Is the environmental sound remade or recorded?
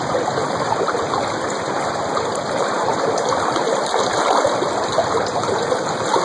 recorded